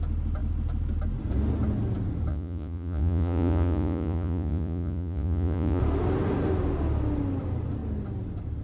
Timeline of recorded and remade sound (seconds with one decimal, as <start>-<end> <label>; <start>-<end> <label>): 0.0-2.3 recorded; 2.3-5.8 remade; 5.8-8.6 recorded

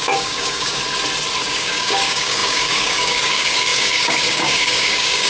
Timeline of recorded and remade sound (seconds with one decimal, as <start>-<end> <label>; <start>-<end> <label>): 0.0-0.8 remade; 0.8-1.4 recorded; 1.4-5.3 remade

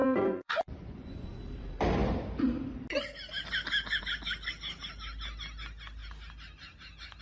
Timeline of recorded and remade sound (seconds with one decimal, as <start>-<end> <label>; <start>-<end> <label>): 0.0-1.3 remade; 1.3-7.2 recorded

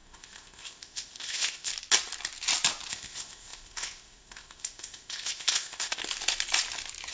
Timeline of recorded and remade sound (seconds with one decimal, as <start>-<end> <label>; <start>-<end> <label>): 0.0-1.7 remade; 1.7-2.9 recorded; 2.9-6.0 remade; 6.0-7.1 recorded